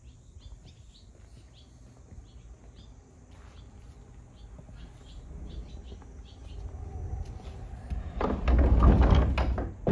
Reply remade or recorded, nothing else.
recorded